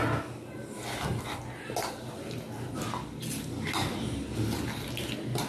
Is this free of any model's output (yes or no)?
yes